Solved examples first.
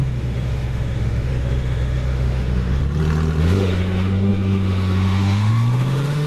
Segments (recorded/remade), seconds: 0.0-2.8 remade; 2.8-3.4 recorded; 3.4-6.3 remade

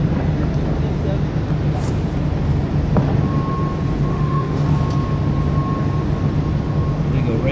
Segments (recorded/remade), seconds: 0.0-4.1 recorded; 4.1-4.6 remade; 4.6-7.5 recorded

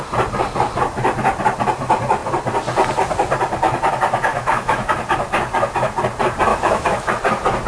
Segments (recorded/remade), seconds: 0.0-4.3 recorded; 4.3-4.9 remade; 4.9-6.5 recorded; 6.5-7.1 remade; 7.1-7.7 recorded

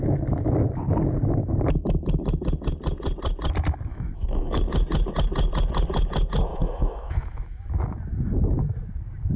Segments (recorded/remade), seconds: 0.0-3.9 recorded; 3.9-4.6 remade; 4.6-6.5 recorded; 6.5-7.7 remade; 7.7-9.4 recorded

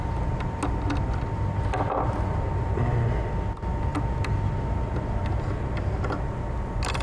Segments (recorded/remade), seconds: 0.0-7.0 recorded